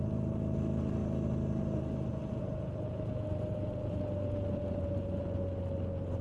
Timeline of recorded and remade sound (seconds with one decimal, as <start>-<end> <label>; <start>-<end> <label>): 0.0-2.1 recorded; 2.1-5.2 remade; 5.2-6.2 recorded